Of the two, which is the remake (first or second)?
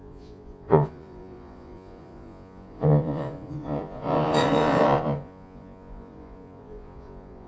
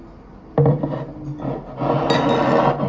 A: first